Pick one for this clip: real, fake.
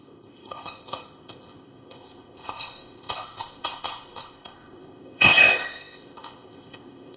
fake